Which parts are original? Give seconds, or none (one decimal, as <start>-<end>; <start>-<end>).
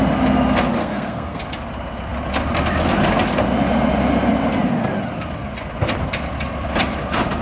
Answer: 0.0-0.8; 1.4-7.4